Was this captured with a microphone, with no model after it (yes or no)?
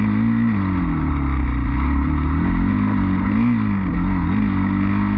yes